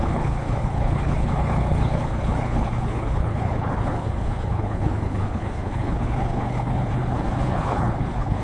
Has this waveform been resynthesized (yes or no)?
yes